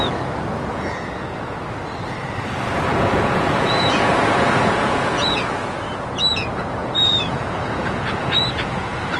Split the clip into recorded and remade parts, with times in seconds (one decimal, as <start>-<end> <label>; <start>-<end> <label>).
0.0-0.7 recorded; 0.7-1.6 remade; 1.6-2.9 recorded; 2.9-5.5 remade; 5.5-6.3 recorded; 6.3-9.2 remade